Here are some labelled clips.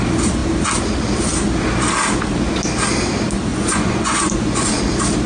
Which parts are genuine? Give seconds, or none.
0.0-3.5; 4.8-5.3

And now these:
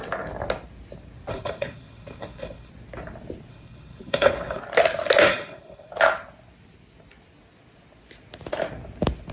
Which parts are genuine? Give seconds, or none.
0.0-1.3; 2.7-3.5; 4.6-5.3; 5.9-9.3

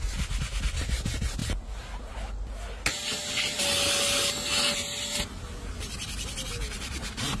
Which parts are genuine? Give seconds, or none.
0.0-7.4

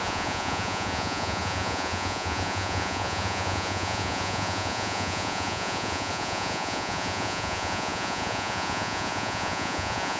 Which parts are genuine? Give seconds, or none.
none